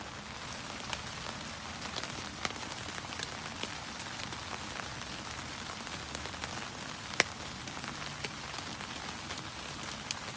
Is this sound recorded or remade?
recorded